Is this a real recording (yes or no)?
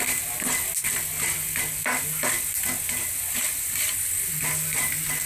yes